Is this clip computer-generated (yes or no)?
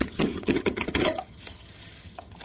yes